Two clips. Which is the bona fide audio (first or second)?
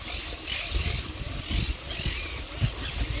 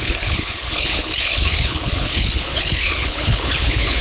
first